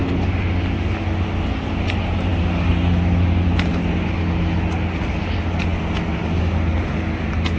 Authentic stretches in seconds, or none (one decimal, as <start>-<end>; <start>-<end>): 0.0-7.6